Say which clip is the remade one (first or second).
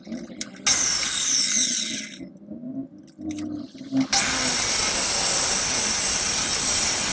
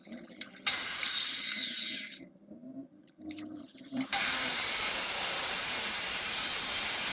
second